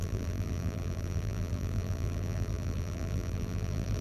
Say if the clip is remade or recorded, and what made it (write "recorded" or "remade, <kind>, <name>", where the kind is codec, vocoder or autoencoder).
remade, vocoder, BigVGAN v2